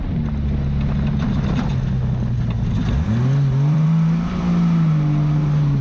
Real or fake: real